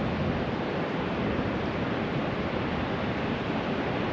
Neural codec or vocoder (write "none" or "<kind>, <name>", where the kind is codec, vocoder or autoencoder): none